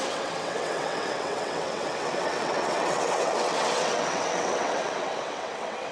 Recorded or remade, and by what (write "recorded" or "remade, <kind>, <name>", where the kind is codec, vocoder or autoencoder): remade, vocoder, WaveNeXt